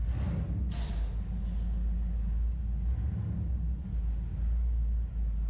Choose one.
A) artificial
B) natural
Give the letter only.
B